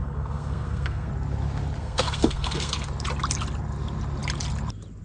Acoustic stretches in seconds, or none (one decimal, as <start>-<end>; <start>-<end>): 1.1-1.8; 2.9-5.0